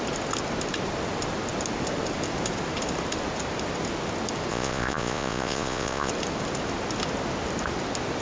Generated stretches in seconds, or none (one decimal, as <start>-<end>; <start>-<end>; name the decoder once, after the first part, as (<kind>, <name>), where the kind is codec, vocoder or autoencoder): 4.5-6.1 (vocoder, Vocos)